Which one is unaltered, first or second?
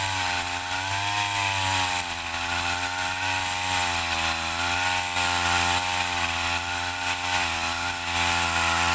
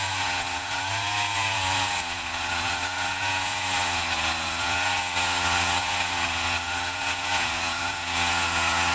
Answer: first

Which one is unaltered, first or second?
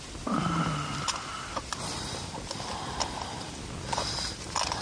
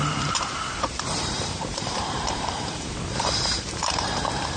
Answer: first